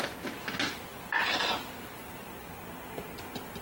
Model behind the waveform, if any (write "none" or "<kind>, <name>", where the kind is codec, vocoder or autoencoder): none